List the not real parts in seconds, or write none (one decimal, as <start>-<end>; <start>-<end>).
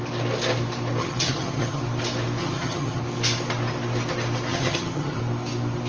1.0-1.8; 2.4-3.0; 4.5-5.2